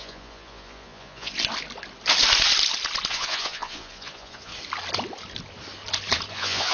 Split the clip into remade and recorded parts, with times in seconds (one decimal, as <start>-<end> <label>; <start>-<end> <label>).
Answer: 0.0-1.3 remade; 1.3-3.1 recorded; 3.1-4.5 remade; 4.5-6.3 recorded; 6.3-6.7 remade